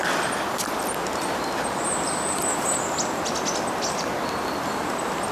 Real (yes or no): yes